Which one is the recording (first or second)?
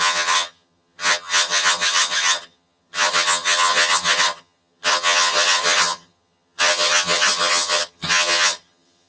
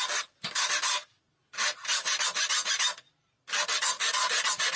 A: second